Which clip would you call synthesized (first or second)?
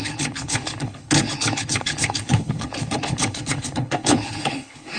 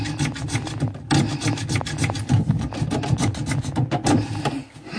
first